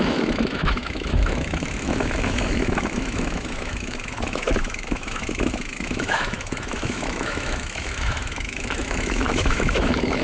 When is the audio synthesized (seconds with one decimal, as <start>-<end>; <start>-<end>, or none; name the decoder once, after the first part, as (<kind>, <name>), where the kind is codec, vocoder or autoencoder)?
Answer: 0.0-10.2 (autoencoder, DAC-VAE)